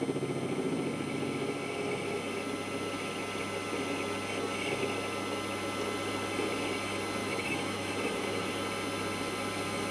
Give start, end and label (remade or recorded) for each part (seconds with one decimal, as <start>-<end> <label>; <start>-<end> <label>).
0.0-7.2 recorded; 7.2-8.5 remade; 8.5-9.9 recorded